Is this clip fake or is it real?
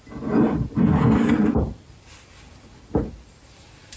real